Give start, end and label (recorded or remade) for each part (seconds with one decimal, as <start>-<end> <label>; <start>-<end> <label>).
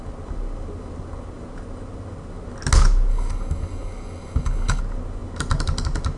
0.0-3.1 recorded; 3.1-4.8 remade; 4.8-6.2 recorded